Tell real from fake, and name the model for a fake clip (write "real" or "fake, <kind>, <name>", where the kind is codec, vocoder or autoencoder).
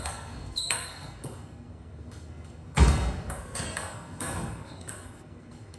fake, codec, SNAC